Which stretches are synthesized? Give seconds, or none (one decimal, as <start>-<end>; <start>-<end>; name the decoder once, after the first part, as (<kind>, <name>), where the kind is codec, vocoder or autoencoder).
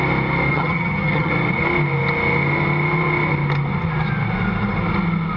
0.5-1.3 (vocoder, HiFi-GAN)